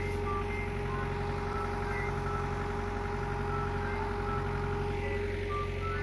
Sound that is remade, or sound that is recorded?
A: recorded